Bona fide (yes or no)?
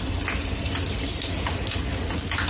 yes